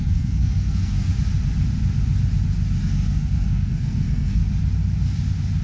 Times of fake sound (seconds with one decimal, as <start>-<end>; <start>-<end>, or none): 0.0-1.1; 2.8-4.4